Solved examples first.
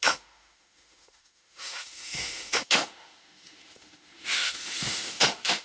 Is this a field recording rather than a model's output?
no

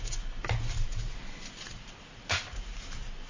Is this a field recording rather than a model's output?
yes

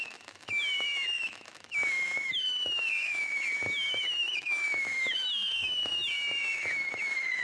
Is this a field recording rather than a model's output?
no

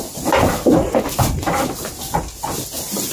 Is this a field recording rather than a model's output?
yes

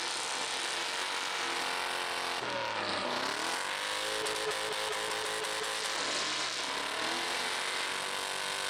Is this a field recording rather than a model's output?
yes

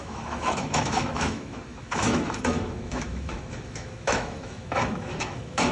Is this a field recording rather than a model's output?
no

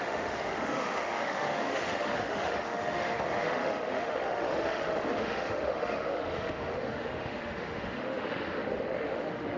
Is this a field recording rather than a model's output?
no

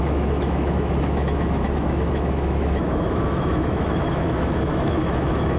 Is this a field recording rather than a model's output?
no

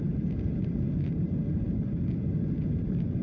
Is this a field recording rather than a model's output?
yes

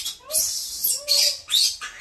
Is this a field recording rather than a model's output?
yes